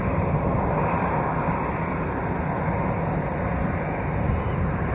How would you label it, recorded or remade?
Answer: recorded